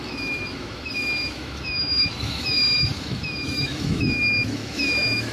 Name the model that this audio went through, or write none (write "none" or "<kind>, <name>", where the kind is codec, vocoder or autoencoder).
autoencoder, DAC-VAE